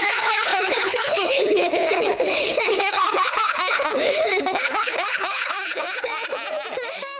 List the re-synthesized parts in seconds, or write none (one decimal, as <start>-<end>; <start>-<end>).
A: 0.0-6.1